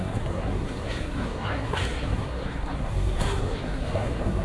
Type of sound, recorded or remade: remade